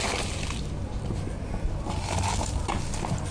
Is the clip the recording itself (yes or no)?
yes